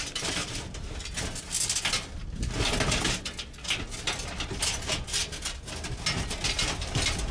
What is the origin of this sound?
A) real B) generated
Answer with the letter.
A